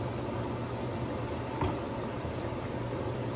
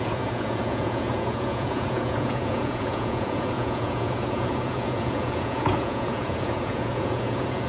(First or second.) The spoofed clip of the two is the second